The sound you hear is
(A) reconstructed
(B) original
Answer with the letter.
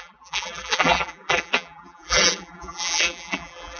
A